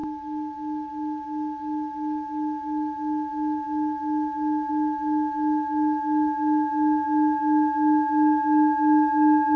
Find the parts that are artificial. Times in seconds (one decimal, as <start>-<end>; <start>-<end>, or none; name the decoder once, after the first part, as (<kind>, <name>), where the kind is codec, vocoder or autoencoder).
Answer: none